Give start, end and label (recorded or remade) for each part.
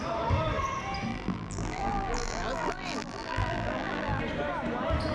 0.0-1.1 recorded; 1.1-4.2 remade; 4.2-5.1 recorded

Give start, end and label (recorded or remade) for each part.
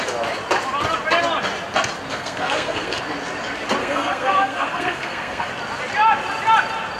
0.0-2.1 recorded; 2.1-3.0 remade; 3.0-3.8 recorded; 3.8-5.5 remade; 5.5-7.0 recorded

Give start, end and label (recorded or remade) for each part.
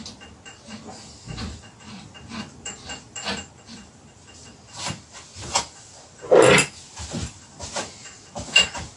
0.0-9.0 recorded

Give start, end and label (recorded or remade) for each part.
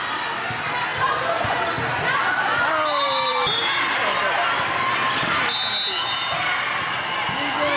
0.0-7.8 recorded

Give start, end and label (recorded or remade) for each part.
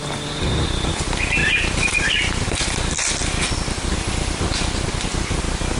0.0-1.4 recorded; 1.4-4.8 remade; 4.8-5.8 recorded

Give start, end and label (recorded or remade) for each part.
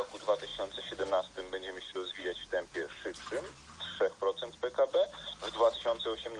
0.0-6.4 recorded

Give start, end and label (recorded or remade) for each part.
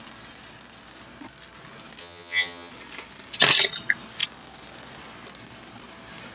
0.0-2.0 recorded; 2.0-2.7 remade; 2.7-6.3 recorded